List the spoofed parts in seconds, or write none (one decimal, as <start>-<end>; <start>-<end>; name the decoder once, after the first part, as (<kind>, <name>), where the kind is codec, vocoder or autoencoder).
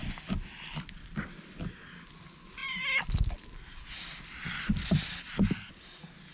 none